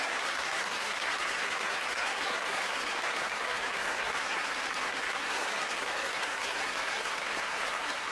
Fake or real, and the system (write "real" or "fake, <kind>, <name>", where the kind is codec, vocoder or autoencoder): fake, codec, SNAC